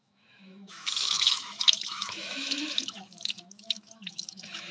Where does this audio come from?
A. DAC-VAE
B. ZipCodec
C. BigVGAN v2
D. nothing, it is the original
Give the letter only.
A